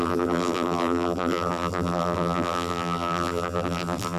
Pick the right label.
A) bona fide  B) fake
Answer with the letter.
B